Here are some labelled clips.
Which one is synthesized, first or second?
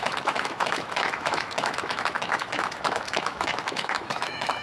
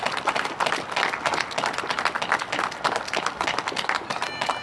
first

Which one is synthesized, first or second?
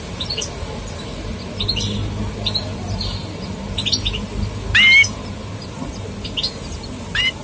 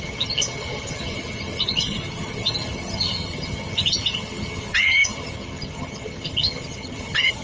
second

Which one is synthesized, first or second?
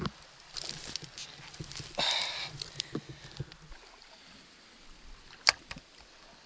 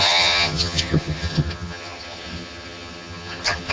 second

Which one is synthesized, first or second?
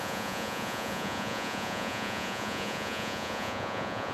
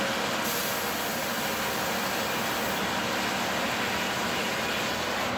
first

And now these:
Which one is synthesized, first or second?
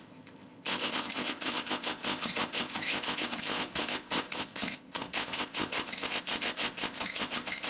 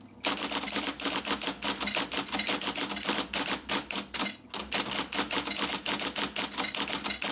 first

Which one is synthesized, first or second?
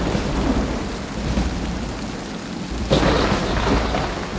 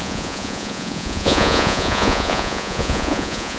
second